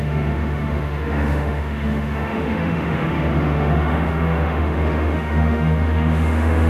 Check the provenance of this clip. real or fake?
fake